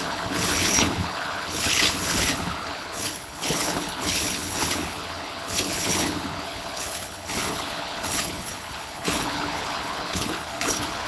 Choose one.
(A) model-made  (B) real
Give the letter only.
A